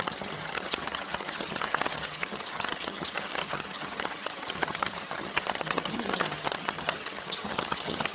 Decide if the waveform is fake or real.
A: fake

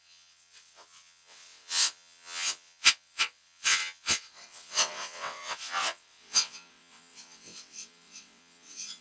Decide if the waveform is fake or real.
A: fake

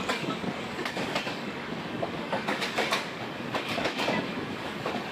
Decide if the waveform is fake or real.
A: fake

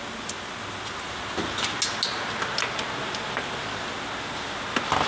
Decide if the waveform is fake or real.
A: real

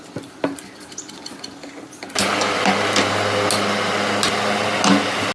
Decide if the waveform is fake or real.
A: real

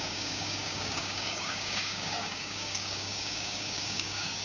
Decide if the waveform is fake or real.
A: fake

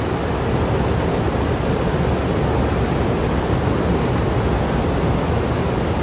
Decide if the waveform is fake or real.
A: real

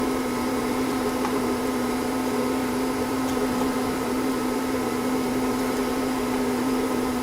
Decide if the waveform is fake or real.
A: fake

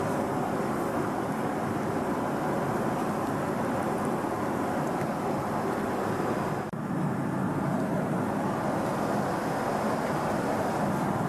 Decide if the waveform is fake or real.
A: real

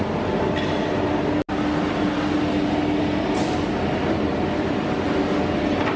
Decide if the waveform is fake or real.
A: real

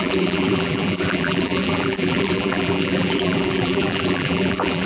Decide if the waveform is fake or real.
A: fake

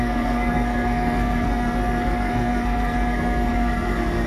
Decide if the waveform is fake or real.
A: fake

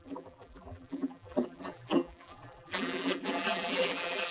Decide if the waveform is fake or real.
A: fake